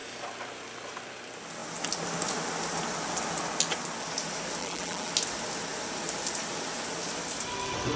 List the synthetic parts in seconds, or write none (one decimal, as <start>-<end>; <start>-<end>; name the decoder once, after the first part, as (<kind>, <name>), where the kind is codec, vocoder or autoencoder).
4.6-5.1 (vocoder, BigVGAN v2)